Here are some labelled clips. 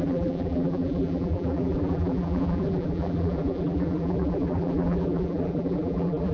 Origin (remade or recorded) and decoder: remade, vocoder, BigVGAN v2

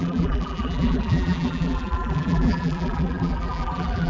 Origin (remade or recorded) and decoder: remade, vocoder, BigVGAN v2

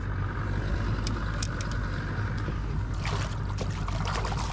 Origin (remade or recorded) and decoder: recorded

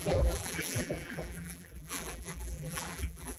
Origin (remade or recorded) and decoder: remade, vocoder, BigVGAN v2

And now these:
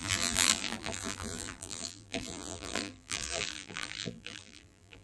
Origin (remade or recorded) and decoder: remade, vocoder, BigVGAN v2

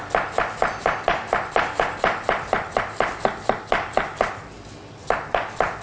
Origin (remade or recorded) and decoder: remade, vocoder, BigVGAN v2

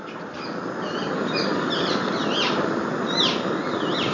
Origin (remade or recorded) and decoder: remade, vocoder, BigVGAN v2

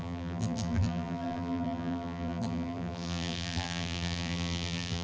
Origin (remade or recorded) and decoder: remade, vocoder, BigVGAN v2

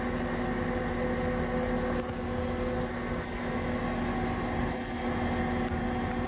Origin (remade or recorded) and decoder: recorded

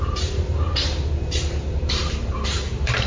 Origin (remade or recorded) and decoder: remade, vocoder, BigVGAN v2